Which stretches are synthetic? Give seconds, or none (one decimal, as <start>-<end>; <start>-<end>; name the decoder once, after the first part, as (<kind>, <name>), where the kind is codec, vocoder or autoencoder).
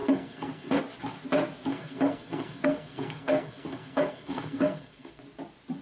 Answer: 0.0-0.8 (codec, SNAC); 1.7-5.2